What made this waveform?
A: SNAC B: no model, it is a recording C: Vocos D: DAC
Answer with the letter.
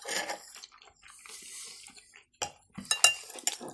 B